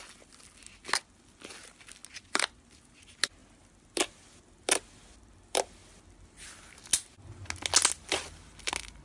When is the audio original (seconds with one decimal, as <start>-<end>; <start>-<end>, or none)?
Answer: 0.0-9.0